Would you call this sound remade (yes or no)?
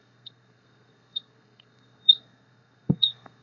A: yes